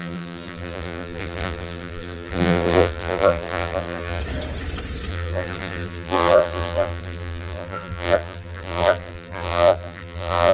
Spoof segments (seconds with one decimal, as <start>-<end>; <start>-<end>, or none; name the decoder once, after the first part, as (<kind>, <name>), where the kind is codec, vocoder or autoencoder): 0.0-4.2 (vocoder, BigVGAN v2); 5.1-10.5